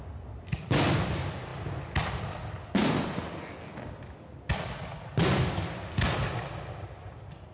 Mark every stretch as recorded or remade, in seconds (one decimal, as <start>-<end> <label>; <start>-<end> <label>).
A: 0.0-7.5 recorded